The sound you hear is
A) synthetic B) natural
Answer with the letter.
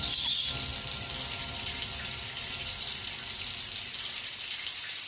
B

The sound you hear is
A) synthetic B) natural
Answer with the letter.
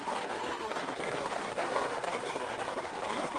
A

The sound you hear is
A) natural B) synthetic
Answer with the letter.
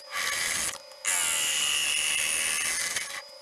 A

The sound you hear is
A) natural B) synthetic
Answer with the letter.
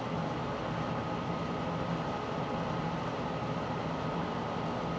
A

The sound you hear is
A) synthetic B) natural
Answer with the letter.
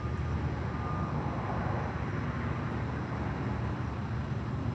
B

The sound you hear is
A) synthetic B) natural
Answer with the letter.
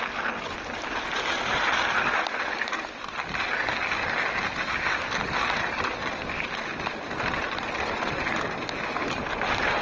B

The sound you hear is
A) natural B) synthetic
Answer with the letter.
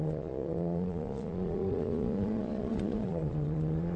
B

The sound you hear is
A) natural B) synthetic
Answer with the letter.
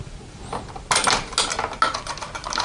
A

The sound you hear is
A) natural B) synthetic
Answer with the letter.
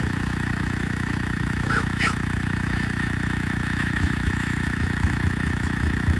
B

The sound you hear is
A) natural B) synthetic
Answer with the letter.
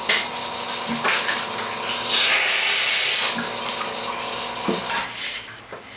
A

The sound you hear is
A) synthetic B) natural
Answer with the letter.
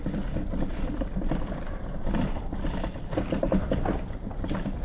B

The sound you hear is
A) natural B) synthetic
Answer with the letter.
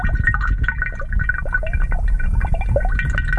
A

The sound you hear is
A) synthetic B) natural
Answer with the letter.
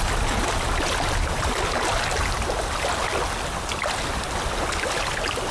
B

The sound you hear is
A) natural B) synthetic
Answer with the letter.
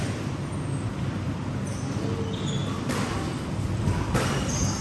A